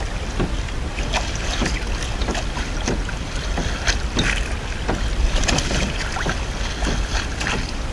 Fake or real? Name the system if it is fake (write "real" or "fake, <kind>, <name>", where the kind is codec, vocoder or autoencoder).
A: real